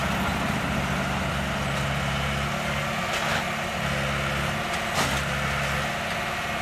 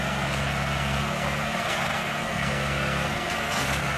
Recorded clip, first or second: first